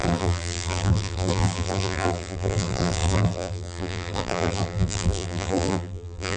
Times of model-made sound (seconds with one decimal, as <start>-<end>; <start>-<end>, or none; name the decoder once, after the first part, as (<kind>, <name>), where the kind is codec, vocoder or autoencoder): 0.0-6.4 (vocoder, BigVGAN v2)